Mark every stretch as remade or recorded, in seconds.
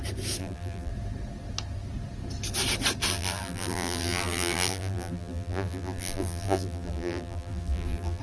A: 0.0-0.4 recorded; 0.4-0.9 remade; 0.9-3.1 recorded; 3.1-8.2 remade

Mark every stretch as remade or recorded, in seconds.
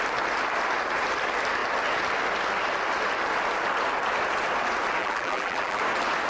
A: 0.0-5.0 recorded; 5.0-5.8 remade; 5.8-6.3 recorded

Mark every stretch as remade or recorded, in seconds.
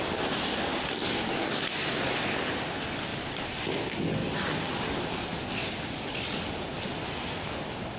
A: 0.0-3.1 recorded; 3.1-3.6 remade; 3.6-4.2 recorded; 4.2-4.8 remade; 4.8-8.0 recorded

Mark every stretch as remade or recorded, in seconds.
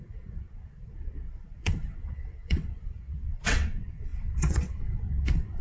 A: 0.0-5.6 remade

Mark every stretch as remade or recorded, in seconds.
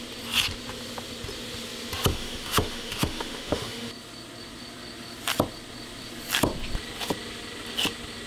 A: 0.0-2.1 recorded; 2.1-3.9 remade; 3.9-8.3 recorded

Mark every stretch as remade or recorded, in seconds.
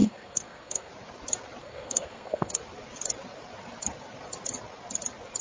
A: 0.0-0.9 remade; 0.9-1.6 recorded; 1.6-2.6 remade; 2.6-5.4 recorded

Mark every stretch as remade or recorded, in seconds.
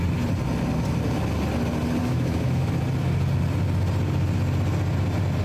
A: 0.0-2.0 recorded; 2.0-2.7 remade; 2.7-5.4 recorded